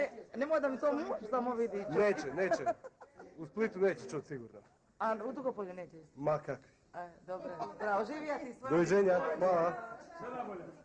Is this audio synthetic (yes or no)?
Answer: no